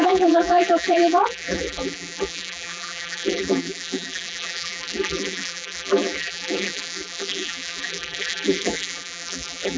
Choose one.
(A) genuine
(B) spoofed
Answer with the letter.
B